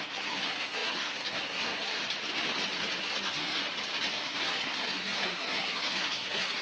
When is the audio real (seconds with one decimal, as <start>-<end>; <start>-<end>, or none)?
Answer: 2.0-3.0; 3.6-4.1